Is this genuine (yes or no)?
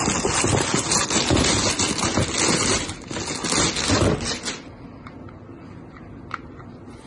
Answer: yes